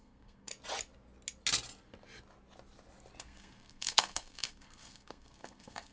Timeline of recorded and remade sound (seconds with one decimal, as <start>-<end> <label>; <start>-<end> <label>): 0.0-0.5 remade; 0.5-3.2 recorded; 3.2-5.9 remade